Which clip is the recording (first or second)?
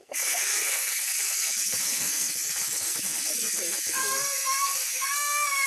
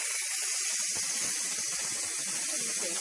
second